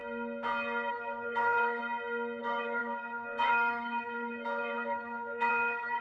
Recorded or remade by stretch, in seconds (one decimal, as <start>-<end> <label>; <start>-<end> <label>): 0.0-0.9 recorded; 0.9-1.8 remade; 1.8-2.4 recorded; 2.4-6.0 remade